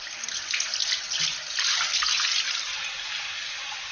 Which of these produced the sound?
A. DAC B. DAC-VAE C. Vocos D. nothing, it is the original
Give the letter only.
D